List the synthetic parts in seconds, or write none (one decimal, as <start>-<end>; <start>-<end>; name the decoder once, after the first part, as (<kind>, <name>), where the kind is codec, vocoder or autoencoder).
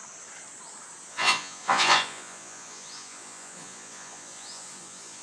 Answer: 1.1-5.2 (vocoder, Vocos)